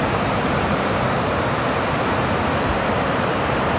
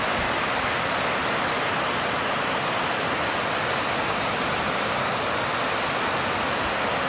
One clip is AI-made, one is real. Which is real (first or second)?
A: second